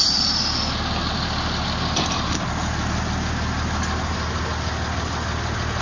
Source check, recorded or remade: recorded